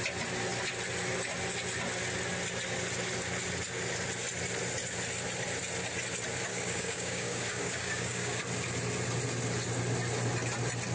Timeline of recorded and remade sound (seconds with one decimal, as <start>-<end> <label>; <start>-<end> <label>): 0.0-6.5 recorded; 6.5-8.4 remade; 8.4-10.9 recorded